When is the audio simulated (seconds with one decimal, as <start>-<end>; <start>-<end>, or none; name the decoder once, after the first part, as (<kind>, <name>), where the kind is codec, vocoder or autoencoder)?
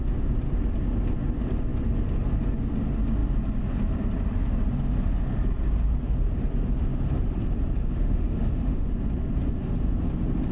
7.8-8.9 (autoencoder, DAC-VAE)